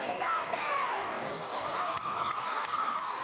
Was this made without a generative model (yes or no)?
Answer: no